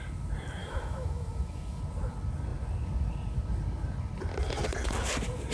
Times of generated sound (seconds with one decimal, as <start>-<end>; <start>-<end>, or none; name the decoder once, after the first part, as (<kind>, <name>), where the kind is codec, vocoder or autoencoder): 0.6-1.8 (autoencoder, DAC-VAE)